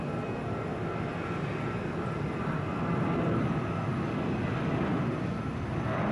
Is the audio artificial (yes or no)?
no